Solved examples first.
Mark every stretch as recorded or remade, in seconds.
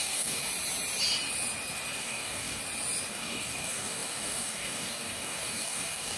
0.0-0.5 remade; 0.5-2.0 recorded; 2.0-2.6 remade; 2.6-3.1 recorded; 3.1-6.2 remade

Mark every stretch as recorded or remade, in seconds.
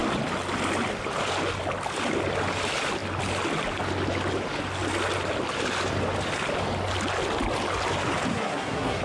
0.0-8.3 recorded; 8.3-9.0 remade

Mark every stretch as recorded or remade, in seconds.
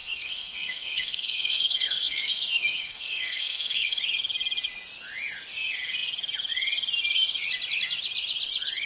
0.0-4.0 remade; 4.0-8.9 recorded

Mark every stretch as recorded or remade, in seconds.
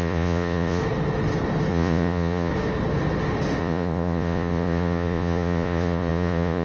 0.0-0.8 remade; 0.8-1.7 recorded; 1.7-2.5 remade; 2.5-3.6 recorded; 3.6-6.6 remade